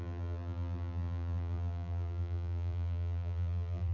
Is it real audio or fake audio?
fake